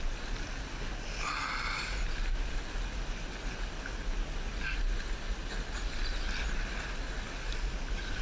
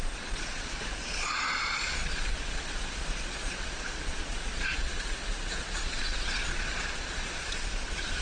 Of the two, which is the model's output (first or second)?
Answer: second